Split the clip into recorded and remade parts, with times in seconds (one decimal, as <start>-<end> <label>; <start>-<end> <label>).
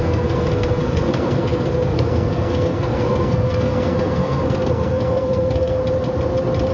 0.0-5.8 remade; 5.8-6.7 recorded